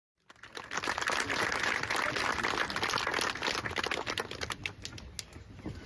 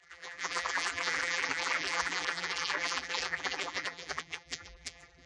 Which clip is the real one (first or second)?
first